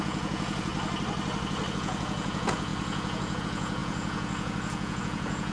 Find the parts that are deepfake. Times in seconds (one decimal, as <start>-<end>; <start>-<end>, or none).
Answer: 0.0-0.7; 1.7-5.5